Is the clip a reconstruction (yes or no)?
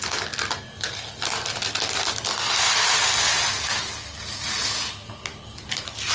no